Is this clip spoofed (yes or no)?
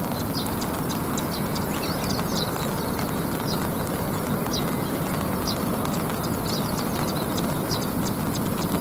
no